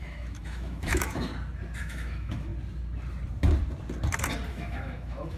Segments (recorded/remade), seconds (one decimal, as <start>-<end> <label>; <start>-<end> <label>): 0.0-1.3 remade; 1.3-1.8 recorded; 1.8-2.5 remade; 2.5-4.5 recorded; 4.5-5.4 remade

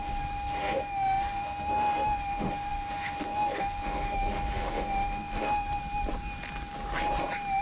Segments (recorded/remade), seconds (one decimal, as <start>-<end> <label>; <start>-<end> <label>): 0.0-5.8 remade; 5.8-7.6 recorded